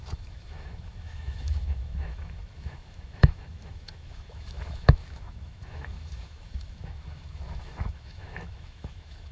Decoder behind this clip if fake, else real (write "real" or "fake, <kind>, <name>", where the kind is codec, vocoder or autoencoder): fake, autoencoder, DAC-VAE